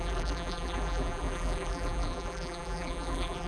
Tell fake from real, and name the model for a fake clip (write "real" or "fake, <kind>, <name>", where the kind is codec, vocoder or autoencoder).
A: fake, vocoder, BigVGAN v2